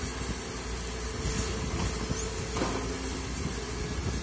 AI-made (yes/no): no